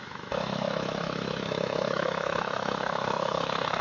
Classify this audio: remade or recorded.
remade